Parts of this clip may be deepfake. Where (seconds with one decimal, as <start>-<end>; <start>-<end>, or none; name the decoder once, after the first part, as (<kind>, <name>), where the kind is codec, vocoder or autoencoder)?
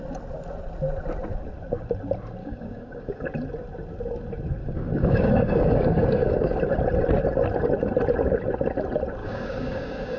2.4-3.2 (codec, DAC); 4.6-6.6; 9.2-10.2